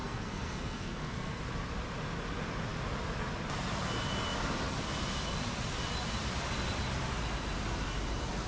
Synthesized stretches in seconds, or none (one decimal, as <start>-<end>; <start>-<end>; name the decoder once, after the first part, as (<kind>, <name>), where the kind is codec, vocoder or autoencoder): 0.0-1.4 (codec, SNAC)